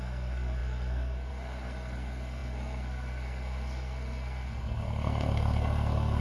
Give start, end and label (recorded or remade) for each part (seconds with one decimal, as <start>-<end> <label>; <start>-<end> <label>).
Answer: 0.0-6.2 remade